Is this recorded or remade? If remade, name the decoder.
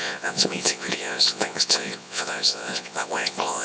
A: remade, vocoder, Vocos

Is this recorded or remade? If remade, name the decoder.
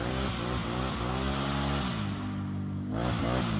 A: recorded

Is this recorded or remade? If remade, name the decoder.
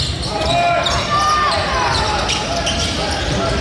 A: recorded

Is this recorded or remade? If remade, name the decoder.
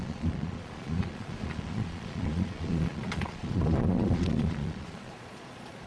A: remade, vocoder, Vocos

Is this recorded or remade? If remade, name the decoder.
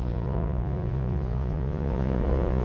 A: remade, vocoder, Vocos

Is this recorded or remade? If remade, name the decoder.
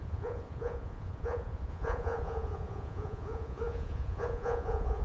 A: remade, vocoder, Vocos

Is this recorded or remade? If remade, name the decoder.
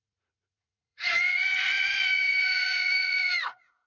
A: remade, vocoder, Vocos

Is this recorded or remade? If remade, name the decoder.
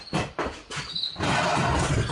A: recorded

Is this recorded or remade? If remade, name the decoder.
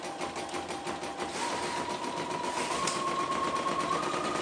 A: recorded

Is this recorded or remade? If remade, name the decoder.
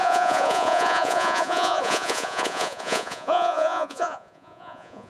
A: remade, vocoder, Vocos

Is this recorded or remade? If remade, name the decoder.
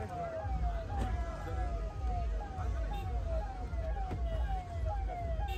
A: recorded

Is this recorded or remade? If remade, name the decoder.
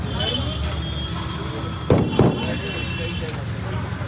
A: recorded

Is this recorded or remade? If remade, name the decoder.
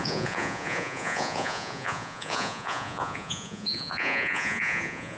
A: remade, vocoder, Vocos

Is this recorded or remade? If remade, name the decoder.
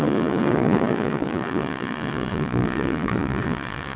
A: remade, vocoder, Vocos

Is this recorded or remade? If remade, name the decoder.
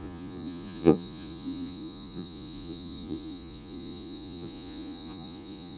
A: remade, vocoder, Vocos